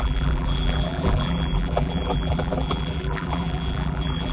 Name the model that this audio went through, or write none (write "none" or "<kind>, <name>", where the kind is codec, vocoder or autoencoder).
vocoder, BigVGAN v2